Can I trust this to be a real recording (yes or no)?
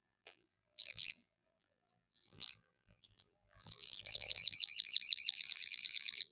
no